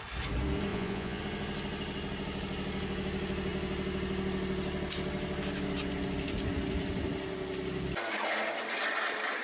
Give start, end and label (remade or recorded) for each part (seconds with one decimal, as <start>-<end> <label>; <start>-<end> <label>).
0.0-0.7 recorded; 0.7-1.2 remade; 1.2-9.4 recorded